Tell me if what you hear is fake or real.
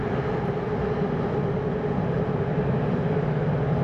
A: real